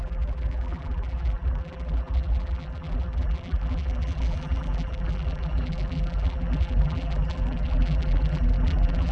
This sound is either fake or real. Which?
fake